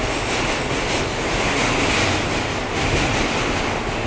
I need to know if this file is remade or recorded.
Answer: recorded